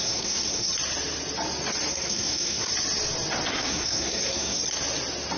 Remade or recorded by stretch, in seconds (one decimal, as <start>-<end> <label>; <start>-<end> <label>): 0.0-0.7 remade; 0.7-1.9 recorded; 1.9-2.7 remade; 2.7-3.5 recorded; 3.5-4.6 remade; 4.6-5.4 recorded